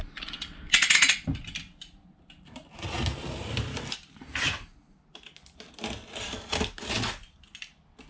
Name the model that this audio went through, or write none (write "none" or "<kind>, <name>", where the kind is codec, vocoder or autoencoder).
none